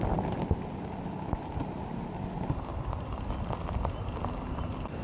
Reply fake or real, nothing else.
real